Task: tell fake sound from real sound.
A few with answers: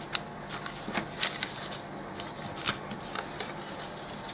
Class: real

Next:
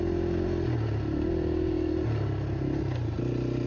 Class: real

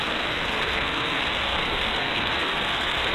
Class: fake